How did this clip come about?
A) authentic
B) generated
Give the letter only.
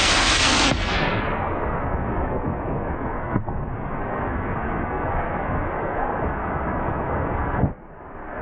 B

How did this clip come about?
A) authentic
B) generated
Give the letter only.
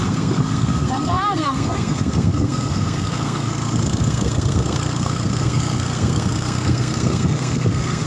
B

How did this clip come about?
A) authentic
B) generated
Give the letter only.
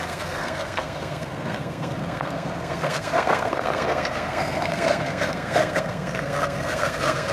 B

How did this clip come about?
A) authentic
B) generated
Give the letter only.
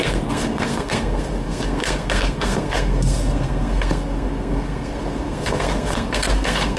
B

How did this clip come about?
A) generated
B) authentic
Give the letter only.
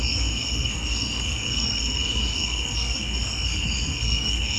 A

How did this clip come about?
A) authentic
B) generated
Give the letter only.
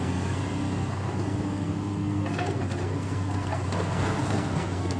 B